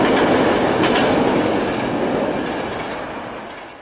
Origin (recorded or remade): recorded